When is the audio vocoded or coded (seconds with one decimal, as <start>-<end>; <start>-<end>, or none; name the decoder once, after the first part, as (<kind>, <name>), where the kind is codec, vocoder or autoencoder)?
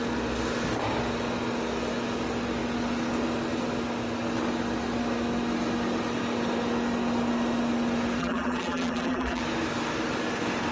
8.2-9.4 (vocoder, BigVGAN v2)